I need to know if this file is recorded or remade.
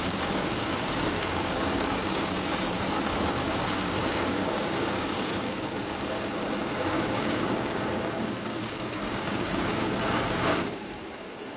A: remade